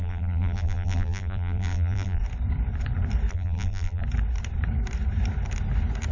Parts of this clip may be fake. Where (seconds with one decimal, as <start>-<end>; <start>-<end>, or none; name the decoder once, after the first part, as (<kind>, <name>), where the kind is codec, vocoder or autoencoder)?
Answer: 0.0-2.2 (vocoder, BigVGAN v2); 3.3-4.0